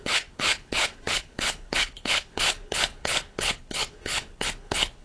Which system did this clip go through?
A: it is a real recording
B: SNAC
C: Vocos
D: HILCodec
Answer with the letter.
D